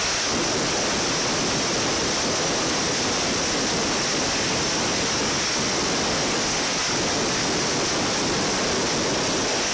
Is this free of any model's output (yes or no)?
yes